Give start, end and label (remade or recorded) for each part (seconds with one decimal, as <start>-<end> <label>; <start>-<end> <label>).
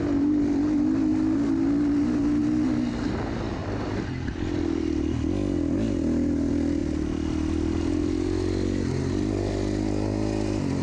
0.0-10.8 recorded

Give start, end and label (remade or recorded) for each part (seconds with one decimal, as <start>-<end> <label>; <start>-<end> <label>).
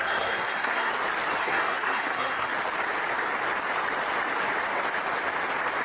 0.0-0.9 remade; 0.9-1.4 recorded; 1.4-2.5 remade; 2.5-5.8 recorded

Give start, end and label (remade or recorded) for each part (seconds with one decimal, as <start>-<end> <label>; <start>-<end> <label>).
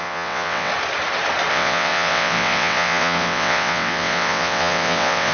0.0-0.7 remade; 0.7-1.5 recorded; 1.5-5.3 remade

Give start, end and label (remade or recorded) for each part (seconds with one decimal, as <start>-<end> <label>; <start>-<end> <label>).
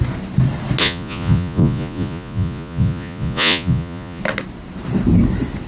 0.0-0.8 recorded; 0.8-4.2 remade; 4.2-5.7 recorded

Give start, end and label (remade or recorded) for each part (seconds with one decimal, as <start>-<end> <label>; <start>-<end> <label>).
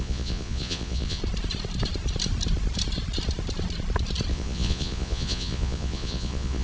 0.0-1.2 remade; 1.2-4.3 recorded; 4.3-6.6 remade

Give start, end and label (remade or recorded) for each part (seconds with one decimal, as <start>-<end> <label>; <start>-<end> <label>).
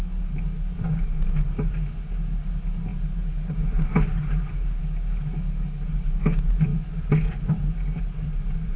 0.0-8.8 recorded